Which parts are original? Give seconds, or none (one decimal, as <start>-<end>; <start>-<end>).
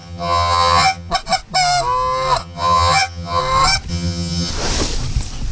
1.1-2.4; 3.4-3.9; 4.5-5.5